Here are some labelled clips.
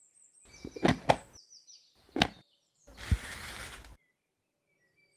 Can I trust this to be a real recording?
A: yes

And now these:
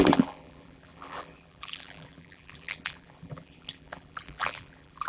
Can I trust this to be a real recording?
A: no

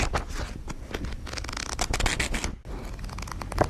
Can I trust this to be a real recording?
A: yes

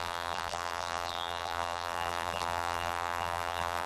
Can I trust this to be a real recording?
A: no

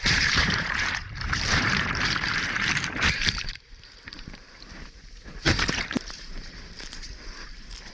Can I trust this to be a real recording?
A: no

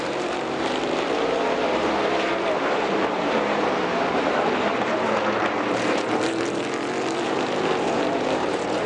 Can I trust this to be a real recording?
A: no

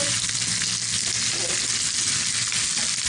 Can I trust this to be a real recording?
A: yes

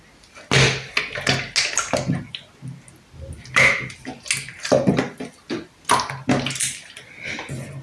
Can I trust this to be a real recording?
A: yes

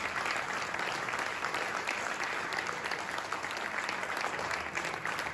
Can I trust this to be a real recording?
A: yes